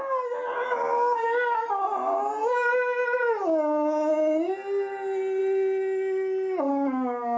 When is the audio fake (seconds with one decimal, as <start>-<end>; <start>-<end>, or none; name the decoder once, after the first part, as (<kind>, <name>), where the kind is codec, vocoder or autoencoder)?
none